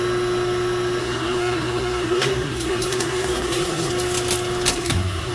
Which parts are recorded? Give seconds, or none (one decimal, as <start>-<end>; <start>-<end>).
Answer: 0.0-1.0; 3.9-4.7

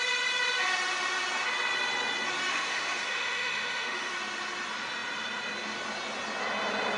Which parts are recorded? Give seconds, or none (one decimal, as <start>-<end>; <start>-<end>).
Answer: 0.0-2.5; 4.1-7.0

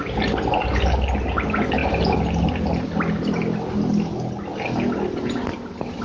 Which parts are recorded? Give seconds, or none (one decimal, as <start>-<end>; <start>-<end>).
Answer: 0.0-6.0